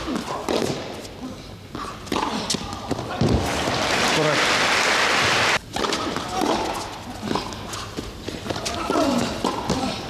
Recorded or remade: recorded